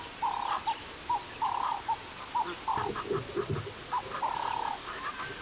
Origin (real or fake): real